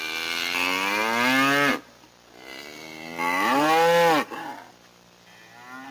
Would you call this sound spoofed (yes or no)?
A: no